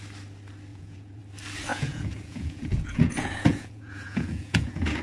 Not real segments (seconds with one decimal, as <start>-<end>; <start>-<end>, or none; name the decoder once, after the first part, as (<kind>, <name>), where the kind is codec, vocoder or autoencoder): 0.7-1.2 (vocoder, Vocos); 1.7-5.0